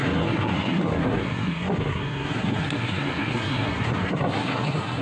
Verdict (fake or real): fake